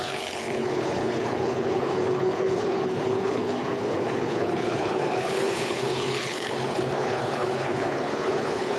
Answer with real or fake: fake